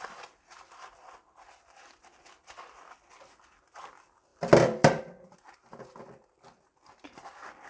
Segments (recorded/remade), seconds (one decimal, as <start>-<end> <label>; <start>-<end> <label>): 0.0-4.3 recorded; 4.3-5.0 remade; 5.0-7.7 recorded